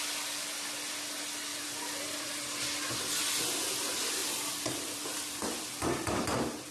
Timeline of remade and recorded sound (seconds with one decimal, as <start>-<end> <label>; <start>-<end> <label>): 0.0-6.7 recorded